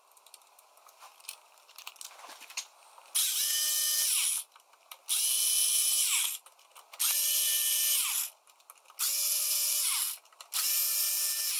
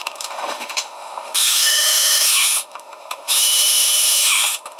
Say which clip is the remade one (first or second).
second